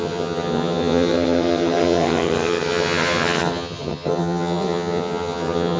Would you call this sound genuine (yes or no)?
no